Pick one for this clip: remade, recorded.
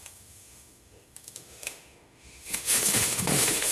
remade